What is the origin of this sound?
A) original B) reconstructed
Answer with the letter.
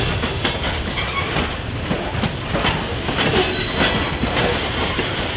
A